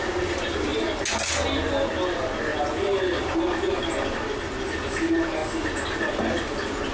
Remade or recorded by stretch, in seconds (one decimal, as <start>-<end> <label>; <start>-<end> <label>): 0.0-6.9 recorded